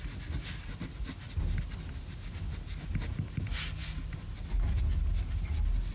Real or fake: real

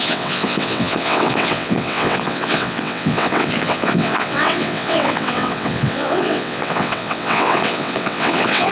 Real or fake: fake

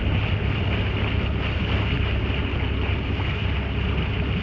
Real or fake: real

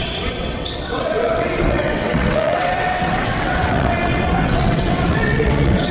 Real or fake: fake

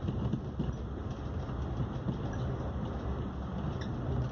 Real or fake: real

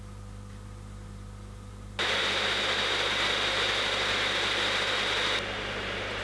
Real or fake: real